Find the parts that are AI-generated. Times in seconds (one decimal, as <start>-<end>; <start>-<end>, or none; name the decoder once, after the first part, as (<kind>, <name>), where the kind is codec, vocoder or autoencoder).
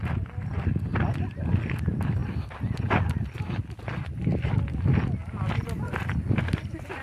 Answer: none